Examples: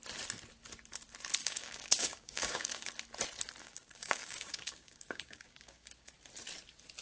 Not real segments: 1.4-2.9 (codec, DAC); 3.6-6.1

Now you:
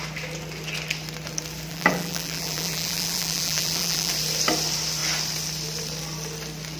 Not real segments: 1.7-4.1 (vocoder, BigVGAN v2)

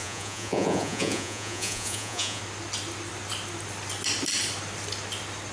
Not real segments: 0.0-2.4 (vocoder, Vocos)

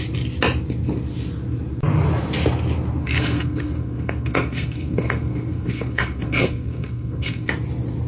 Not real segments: 3.0-7.5 (codec, SNAC)

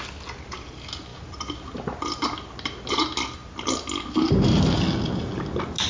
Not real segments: none

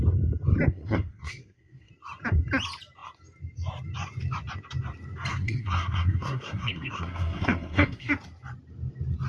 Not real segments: 0.7-1.9 (codec, SNAC); 5.3-8.1